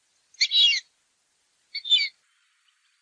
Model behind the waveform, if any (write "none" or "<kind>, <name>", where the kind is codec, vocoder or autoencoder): none